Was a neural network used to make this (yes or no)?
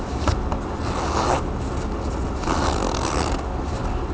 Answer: no